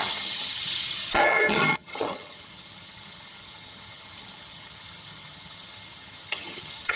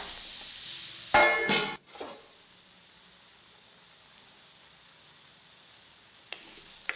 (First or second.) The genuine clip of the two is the second